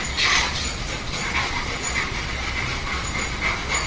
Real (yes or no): no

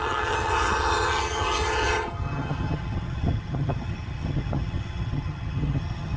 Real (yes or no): no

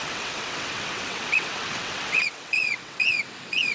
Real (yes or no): no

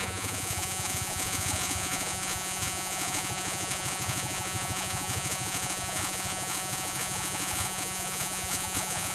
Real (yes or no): no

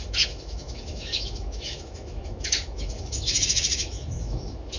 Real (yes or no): no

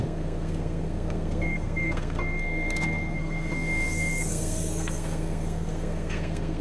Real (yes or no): no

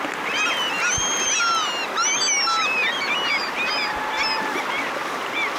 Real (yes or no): yes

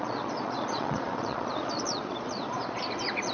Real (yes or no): no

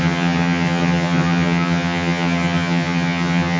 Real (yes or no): no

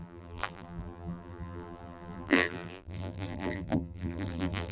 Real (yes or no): no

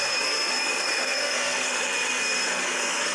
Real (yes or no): no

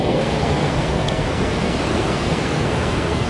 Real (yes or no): no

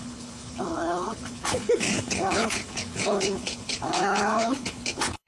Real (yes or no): no